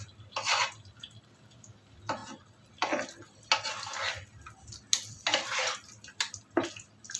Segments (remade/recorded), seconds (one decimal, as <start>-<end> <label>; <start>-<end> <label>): 0.0-7.2 recorded